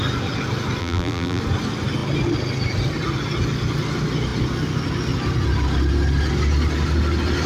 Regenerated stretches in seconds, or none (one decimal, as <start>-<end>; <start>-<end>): 0.8-1.4